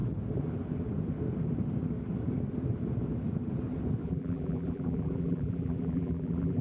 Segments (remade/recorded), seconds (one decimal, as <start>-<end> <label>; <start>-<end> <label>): 0.0-4.0 recorded; 4.0-6.6 remade